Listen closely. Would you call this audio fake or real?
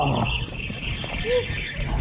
real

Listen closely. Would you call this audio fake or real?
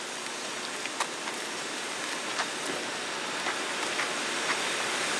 real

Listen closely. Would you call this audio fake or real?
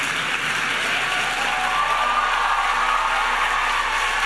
real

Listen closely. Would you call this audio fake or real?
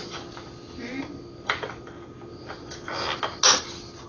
real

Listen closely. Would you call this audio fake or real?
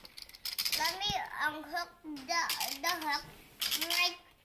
real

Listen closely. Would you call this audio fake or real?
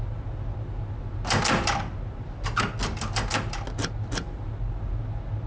real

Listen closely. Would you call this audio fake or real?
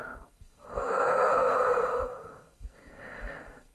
fake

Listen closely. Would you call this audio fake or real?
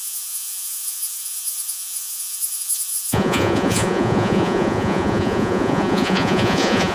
fake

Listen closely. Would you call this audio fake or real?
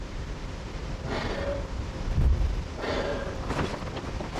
fake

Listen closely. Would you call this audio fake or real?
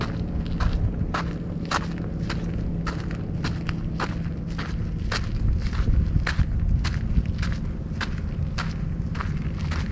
real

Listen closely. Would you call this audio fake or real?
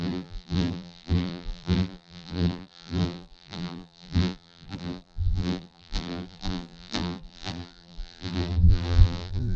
fake